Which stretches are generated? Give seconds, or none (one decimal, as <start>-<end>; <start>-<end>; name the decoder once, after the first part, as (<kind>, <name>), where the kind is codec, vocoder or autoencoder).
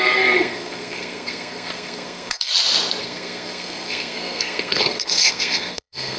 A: 0.0-2.5 (codec, SNAC); 3.0-6.2